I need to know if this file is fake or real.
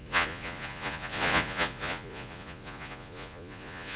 fake